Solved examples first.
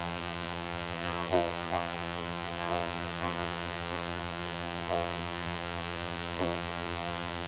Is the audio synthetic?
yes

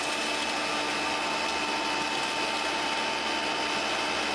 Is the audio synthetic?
no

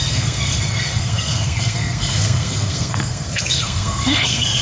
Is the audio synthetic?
yes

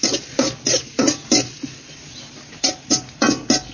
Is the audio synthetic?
no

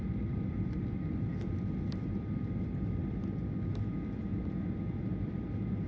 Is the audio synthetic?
no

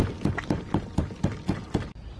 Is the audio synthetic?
no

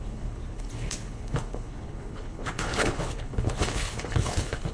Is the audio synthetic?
yes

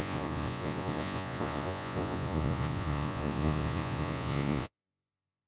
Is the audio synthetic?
yes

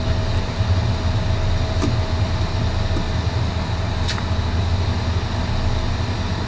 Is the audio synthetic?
no